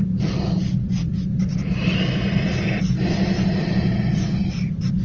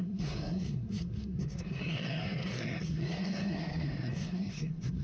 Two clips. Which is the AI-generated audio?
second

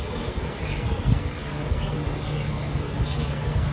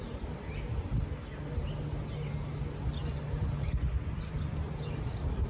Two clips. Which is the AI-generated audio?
first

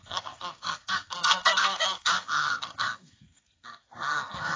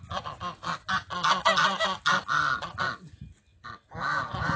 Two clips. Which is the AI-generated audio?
first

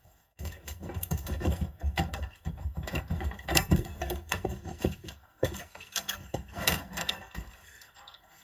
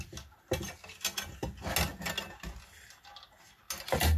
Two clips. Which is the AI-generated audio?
first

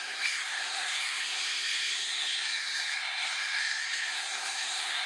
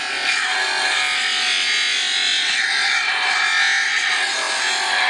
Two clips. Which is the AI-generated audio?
first